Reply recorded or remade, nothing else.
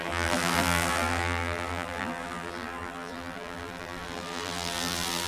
remade